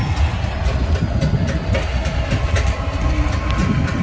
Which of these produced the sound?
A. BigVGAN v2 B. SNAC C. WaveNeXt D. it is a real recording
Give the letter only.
D